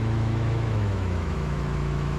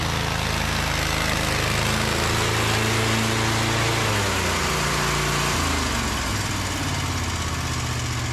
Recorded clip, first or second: second